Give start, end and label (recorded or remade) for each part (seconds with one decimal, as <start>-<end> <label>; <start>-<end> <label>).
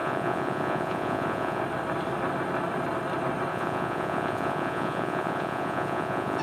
0.0-1.6 remade; 1.6-3.5 recorded; 3.5-6.4 remade